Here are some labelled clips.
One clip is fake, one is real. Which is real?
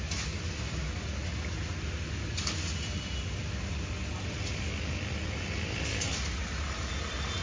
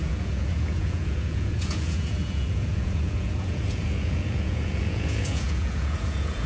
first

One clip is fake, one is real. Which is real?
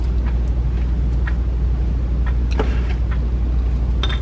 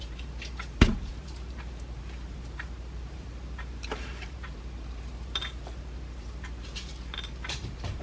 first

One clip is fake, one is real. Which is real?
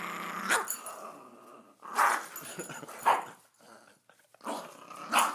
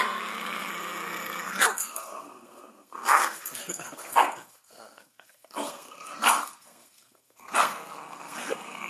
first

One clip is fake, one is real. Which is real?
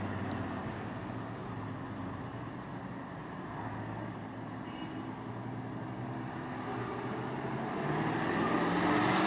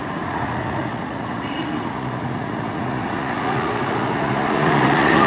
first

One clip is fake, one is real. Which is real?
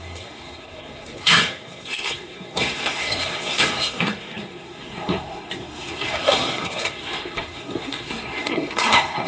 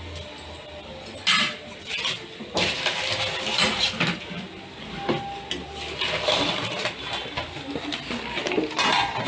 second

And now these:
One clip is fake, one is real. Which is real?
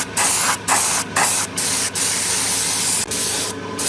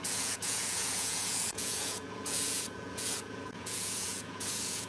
first